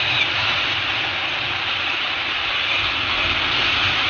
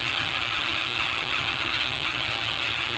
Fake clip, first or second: second